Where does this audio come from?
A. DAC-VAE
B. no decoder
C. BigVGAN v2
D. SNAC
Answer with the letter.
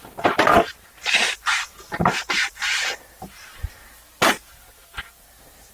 C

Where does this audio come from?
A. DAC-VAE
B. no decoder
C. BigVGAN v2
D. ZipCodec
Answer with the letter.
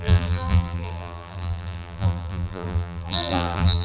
C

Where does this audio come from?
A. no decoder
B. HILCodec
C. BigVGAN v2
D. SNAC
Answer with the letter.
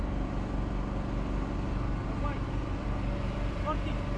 A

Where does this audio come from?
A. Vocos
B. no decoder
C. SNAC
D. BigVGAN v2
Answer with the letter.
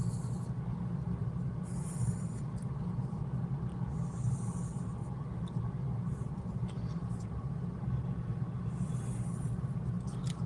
B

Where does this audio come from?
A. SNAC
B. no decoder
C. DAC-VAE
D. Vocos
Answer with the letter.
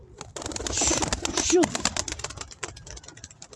B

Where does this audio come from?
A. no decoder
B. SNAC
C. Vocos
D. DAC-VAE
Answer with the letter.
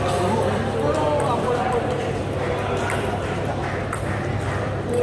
A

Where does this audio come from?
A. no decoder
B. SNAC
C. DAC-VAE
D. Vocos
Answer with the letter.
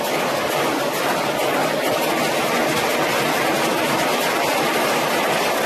A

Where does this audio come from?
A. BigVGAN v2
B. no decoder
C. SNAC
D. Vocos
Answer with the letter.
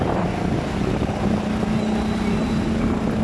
B